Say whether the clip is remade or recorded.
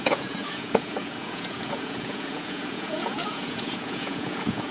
remade